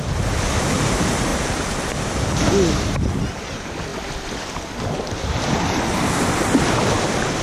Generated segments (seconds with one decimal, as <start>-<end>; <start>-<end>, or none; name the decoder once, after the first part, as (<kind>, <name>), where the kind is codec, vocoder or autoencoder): 1.3-2.2 (vocoder, BigVGAN v2); 3.9-7.4